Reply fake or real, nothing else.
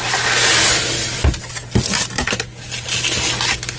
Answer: real